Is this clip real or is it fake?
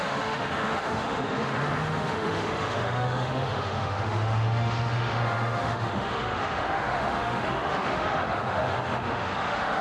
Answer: fake